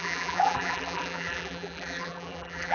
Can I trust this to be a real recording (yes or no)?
no